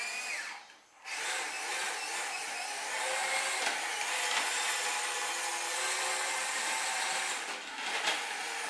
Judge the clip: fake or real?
real